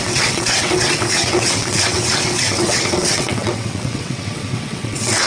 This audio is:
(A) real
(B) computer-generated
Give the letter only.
B